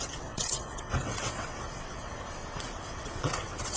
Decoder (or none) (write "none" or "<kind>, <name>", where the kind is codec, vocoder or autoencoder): vocoder, WaveNeXt